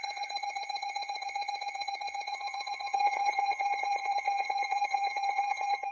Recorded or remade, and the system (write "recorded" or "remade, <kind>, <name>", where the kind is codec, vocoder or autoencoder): remade, vocoder, HiFi-GAN